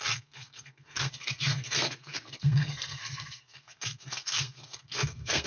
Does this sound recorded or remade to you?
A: remade